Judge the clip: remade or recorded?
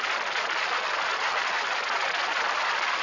recorded